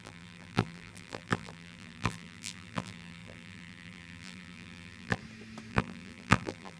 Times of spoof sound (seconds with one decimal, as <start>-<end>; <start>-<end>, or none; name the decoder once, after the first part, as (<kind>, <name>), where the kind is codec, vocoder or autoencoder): 0.0-5.2 (vocoder, BigVGAN v2); 5.7-6.8